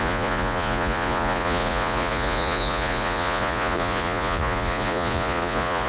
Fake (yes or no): yes